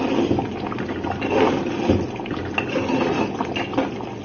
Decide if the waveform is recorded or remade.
recorded